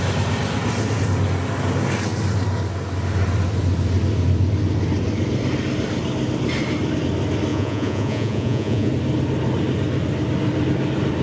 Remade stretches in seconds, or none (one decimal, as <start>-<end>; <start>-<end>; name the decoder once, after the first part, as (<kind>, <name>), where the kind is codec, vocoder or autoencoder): 7.5-8.9 (vocoder, Vocos)